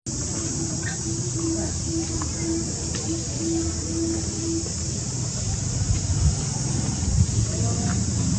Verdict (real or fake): real